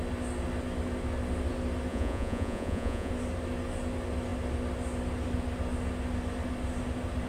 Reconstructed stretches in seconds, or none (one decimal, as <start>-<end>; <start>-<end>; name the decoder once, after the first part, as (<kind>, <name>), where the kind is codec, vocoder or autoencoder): 1.9-3.1 (vocoder, Vocos)